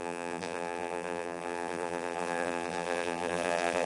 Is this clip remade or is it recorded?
remade